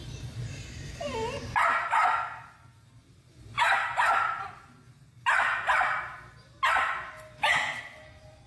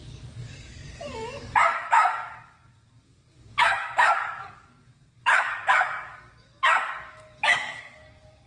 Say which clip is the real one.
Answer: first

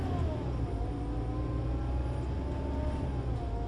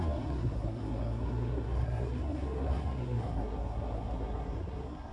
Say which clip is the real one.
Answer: first